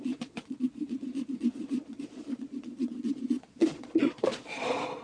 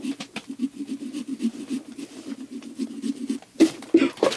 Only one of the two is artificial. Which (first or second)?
first